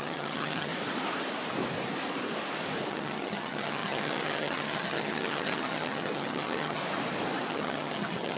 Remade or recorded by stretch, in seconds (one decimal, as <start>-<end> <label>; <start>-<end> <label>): 0.0-0.7 remade; 0.7-2.9 recorded; 2.9-6.8 remade; 6.8-7.5 recorded; 7.5-8.4 remade

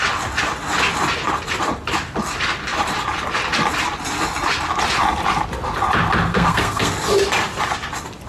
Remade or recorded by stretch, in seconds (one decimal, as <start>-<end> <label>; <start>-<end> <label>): 0.0-6.3 recorded; 6.3-6.9 remade; 6.9-8.3 recorded

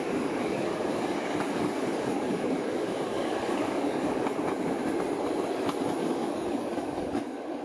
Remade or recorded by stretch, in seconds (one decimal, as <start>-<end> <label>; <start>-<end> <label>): 0.0-4.8 remade; 4.8-6.0 recorded; 6.0-7.6 remade

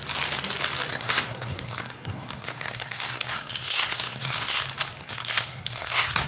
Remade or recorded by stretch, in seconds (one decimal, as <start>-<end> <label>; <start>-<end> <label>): 0.0-0.9 recorded; 0.9-4.6 remade; 4.6-5.0 recorded; 5.0-6.3 remade

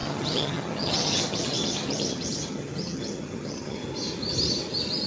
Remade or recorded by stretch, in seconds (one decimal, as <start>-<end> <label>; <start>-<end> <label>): 0.0-3.8 remade; 3.8-5.1 recorded

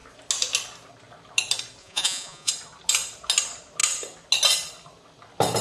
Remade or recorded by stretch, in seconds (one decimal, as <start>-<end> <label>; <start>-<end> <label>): 0.0-1.8 recorded; 1.8-2.5 remade; 2.5-5.6 recorded